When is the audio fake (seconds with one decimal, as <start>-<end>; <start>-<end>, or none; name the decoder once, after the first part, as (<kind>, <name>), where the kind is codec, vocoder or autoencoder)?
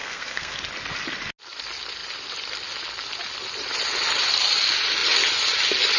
0.0-0.6 (codec, SNAC)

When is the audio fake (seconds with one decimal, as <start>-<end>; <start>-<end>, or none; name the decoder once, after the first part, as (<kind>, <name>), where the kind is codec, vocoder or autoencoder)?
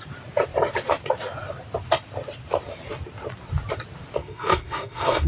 4.2-5.3 (codec, SNAC)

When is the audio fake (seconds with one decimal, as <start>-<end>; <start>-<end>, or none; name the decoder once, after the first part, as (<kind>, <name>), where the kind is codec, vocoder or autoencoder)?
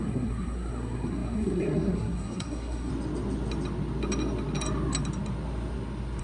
0.0-2.9 (codec, SNAC)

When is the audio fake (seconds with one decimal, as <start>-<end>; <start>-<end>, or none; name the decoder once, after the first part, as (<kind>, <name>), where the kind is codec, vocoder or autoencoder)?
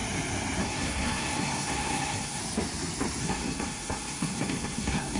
0.6-2.4 (codec, SNAC); 3.2-5.2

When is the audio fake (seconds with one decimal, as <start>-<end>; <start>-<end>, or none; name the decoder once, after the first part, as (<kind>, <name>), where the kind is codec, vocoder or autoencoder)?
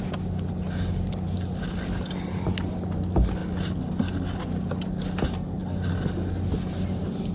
none